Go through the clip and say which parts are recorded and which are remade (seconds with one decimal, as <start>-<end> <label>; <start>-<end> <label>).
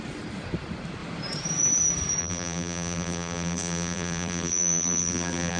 0.0-2.2 recorded; 2.2-5.6 remade